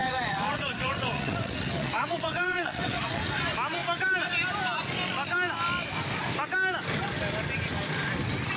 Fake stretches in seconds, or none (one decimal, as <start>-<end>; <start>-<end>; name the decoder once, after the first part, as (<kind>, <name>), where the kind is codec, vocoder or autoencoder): 0.0-3.4 (vocoder, WaveNeXt)